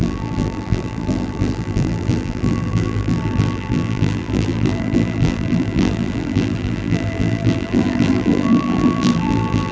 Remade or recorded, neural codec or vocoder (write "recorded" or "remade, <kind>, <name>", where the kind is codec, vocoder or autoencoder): remade, vocoder, BigVGAN v2